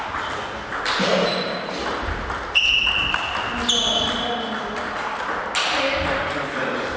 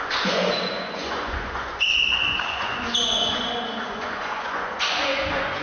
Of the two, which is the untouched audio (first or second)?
first